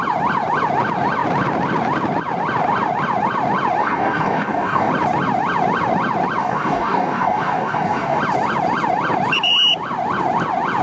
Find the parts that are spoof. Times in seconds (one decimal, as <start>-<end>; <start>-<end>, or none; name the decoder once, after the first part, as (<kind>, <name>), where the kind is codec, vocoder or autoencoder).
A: 3.8-4.9 (codec, DAC); 6.4-8.2